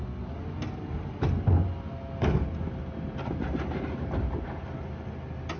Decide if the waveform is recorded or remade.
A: recorded